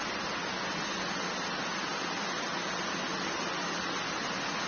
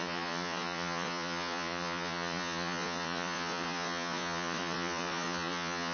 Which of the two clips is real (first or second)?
first